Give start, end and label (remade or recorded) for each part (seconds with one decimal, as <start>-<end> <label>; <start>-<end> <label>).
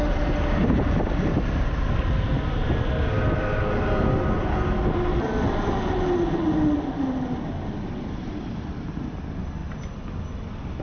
0.0-10.8 recorded